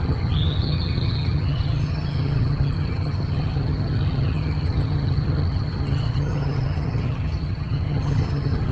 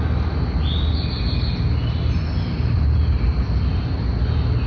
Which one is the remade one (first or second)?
first